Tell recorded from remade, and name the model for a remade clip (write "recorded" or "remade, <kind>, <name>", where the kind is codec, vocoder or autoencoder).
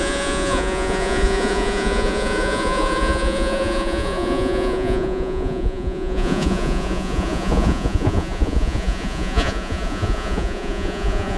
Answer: remade, vocoder, Vocos